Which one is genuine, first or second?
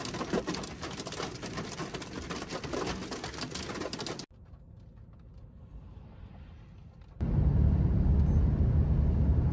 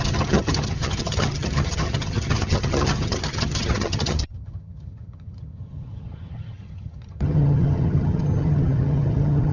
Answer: first